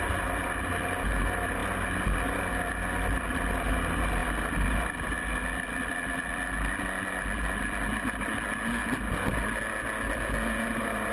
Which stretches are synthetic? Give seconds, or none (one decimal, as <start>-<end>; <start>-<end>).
none